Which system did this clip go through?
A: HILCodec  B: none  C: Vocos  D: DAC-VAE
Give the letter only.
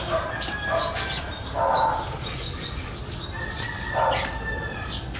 B